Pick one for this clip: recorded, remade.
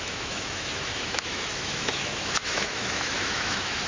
remade